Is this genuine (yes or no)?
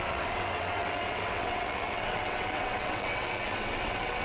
no